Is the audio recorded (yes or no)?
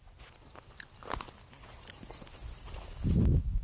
yes